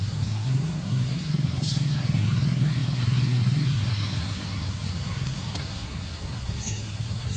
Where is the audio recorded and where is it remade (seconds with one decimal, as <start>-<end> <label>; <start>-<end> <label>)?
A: 0.0-7.4 remade